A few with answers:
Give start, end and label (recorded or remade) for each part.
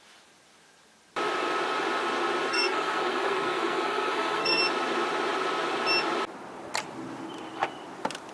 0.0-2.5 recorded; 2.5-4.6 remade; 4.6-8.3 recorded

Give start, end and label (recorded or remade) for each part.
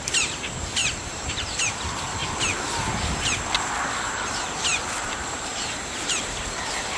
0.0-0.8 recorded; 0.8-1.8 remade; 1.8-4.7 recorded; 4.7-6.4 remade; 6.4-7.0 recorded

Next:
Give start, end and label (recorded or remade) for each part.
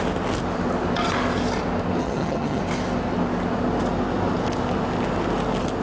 0.0-2.0 recorded; 2.0-2.6 remade; 2.6-5.8 recorded